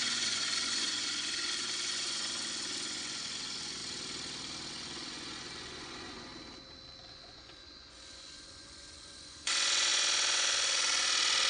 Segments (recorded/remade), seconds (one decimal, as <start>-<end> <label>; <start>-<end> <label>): 0.0-3.8 remade; 3.8-4.7 recorded; 4.7-6.3 remade; 6.3-7.1 recorded; 7.1-11.5 remade